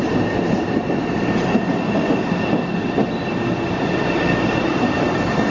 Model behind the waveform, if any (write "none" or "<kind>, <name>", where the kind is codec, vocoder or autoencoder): none